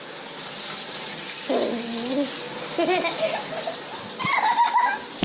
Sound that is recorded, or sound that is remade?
recorded